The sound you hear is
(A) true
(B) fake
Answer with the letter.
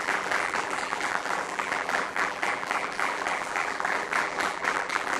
B